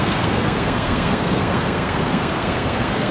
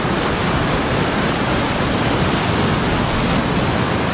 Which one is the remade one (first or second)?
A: first